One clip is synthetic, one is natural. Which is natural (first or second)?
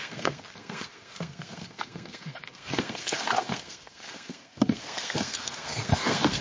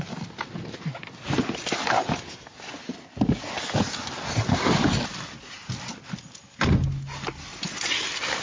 second